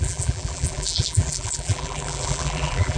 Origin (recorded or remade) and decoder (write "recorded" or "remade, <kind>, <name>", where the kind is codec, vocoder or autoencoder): remade, vocoder, BigVGAN v2